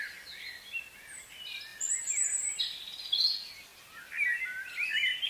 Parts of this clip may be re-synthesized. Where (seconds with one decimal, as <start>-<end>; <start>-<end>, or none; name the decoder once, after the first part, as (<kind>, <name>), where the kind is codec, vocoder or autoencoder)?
none